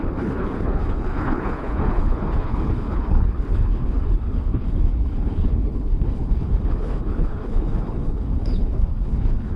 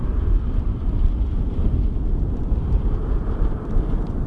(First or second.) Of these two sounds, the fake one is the first